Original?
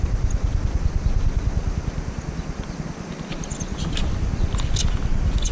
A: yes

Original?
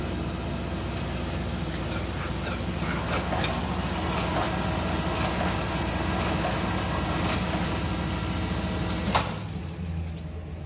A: yes